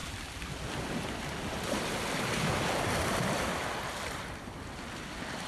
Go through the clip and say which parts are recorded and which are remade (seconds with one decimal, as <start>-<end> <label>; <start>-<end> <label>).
0.0-3.3 recorded; 3.3-5.5 remade